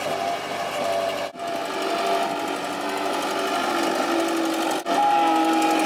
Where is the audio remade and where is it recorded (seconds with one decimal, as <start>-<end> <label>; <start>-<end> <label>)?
0.0-5.9 recorded